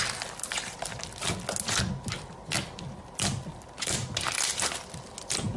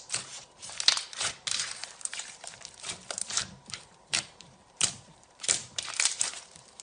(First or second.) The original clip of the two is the first